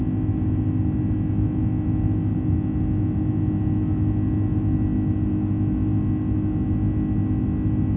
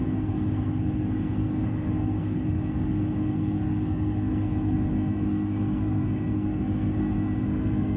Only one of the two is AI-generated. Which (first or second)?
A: second